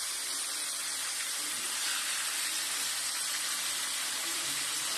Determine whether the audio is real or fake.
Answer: real